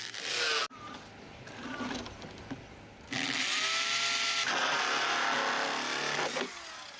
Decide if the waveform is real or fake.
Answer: real